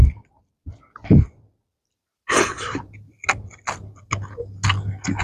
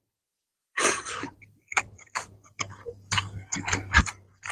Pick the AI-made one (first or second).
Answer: second